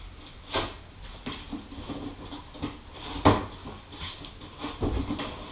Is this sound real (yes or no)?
yes